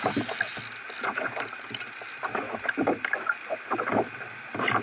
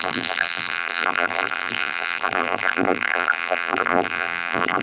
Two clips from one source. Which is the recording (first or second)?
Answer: first